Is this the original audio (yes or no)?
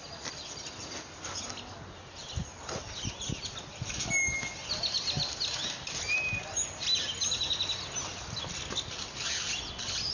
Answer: yes